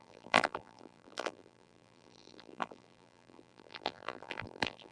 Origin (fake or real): fake